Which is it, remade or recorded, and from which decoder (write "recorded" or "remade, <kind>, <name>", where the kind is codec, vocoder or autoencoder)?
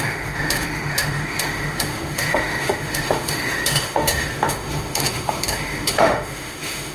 remade, autoencoder, DAC-VAE